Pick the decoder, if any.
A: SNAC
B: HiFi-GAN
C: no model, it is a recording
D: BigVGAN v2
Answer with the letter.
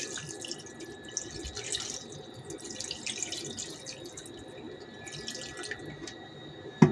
C